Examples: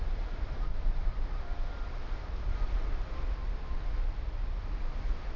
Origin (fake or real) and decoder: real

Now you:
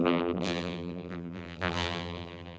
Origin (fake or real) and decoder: fake, vocoder, BigVGAN v2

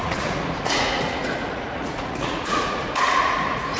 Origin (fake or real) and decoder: fake, vocoder, Vocos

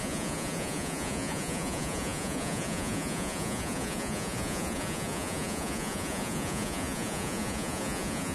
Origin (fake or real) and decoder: fake, vocoder, Vocos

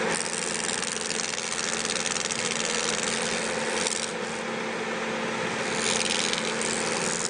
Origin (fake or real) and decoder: real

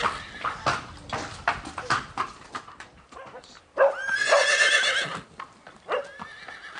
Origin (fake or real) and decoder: real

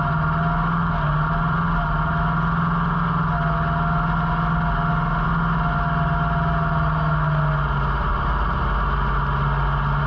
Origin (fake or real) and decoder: real